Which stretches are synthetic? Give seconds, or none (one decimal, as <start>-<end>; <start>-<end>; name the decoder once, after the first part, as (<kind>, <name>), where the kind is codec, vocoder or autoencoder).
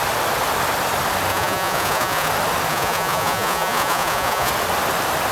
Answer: 1.3-2.3 (vocoder, Vocos); 2.7-4.5